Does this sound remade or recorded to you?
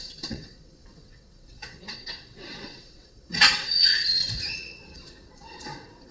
remade